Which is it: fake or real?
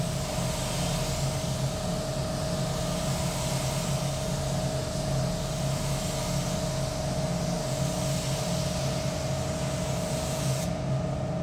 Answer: real